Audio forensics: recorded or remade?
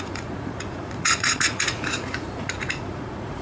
remade